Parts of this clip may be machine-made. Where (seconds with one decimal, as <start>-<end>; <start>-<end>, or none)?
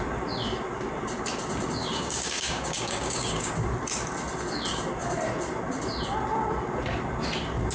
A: 1.8-3.5